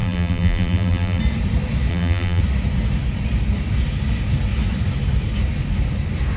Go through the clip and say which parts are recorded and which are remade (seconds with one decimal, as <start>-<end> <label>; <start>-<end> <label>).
0.0-1.2 remade; 1.2-1.9 recorded; 1.9-2.4 remade; 2.4-6.4 recorded